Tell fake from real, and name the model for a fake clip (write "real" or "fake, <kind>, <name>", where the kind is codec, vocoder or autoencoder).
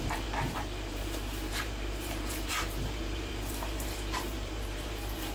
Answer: fake, vocoder, BigVGAN v2